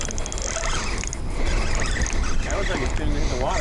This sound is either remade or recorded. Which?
recorded